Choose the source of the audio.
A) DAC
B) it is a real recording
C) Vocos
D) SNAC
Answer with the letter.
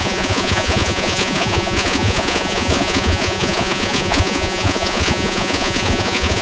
C